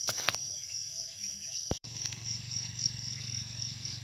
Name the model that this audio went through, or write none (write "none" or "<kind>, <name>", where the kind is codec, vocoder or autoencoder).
codec, SNAC